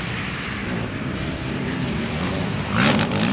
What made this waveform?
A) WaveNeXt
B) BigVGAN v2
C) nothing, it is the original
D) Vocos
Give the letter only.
B